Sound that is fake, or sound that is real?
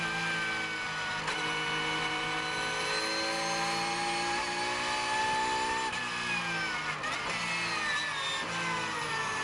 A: real